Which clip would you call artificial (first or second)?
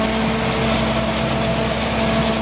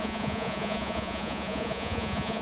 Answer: second